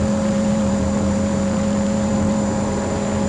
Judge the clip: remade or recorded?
remade